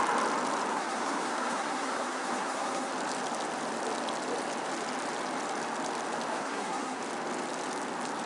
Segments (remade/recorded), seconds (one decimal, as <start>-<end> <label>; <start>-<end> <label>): 0.0-0.7 recorded; 0.7-2.9 remade; 2.9-6.3 recorded; 6.3-7.0 remade; 7.0-8.3 recorded